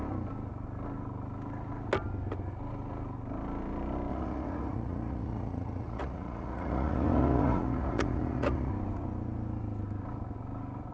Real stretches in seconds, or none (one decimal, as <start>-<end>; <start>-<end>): 0.0-4.1; 8.7-10.9